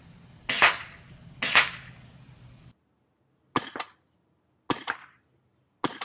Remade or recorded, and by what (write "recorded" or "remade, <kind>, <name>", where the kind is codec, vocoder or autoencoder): recorded